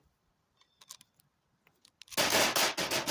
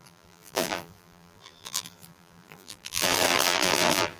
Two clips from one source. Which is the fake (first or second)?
second